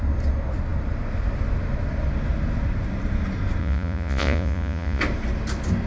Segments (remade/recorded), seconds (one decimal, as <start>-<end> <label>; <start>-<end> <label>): 0.0-3.6 recorded; 3.6-5.0 remade; 5.0-5.9 recorded